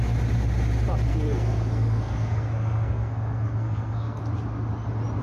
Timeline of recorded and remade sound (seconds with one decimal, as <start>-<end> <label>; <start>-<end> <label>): 0.0-1.1 recorded; 1.1-4.2 remade; 4.2-5.2 recorded